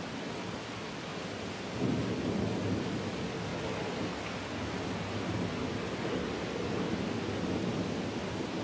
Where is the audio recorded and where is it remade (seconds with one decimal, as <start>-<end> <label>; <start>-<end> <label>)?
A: 0.0-8.6 recorded